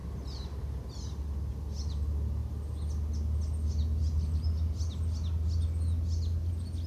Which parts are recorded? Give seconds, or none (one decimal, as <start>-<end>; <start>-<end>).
0.0-6.9